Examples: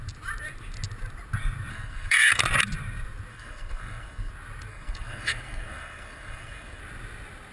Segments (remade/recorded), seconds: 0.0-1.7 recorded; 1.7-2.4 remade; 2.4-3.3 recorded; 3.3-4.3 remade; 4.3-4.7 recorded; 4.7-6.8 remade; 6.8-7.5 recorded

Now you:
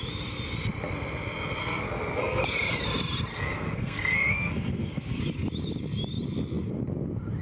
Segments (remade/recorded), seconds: 0.0-1.6 recorded; 1.6-2.4 remade; 2.4-3.3 recorded; 3.3-5.2 remade; 5.2-7.4 recorded

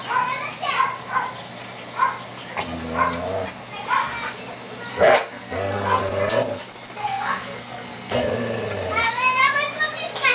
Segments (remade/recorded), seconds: 0.0-4.9 recorded; 4.9-6.0 remade; 6.0-7.0 recorded; 7.0-8.3 remade; 8.3-10.3 recorded

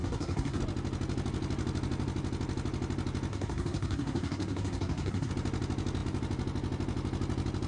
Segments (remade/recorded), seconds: 0.0-0.6 remade; 0.6-3.3 recorded; 3.3-5.3 remade; 5.3-7.7 recorded

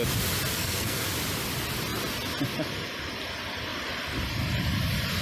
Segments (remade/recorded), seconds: 0.0-0.5 recorded; 0.5-1.1 remade; 1.1-5.2 recorded

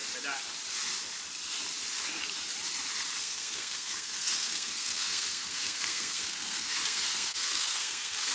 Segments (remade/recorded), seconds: 0.0-3.2 recorded; 3.2-8.3 remade